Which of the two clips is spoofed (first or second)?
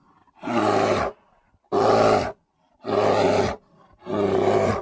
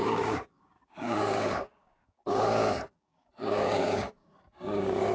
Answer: second